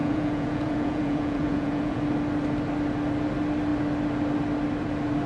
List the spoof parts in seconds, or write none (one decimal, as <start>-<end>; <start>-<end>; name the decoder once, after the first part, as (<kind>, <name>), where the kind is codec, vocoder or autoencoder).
0.0-2.0 (vocoder, Vocos)